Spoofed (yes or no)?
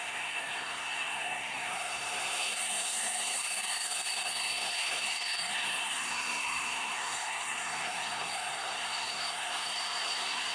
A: yes